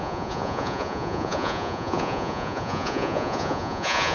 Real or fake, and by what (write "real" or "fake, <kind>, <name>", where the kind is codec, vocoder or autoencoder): fake, vocoder, Vocos